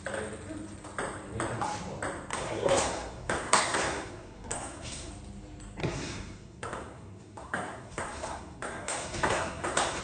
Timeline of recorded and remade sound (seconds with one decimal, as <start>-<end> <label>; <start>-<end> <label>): 0.0-2.3 recorded; 2.3-5.1 remade; 5.1-5.8 recorded; 5.8-10.0 remade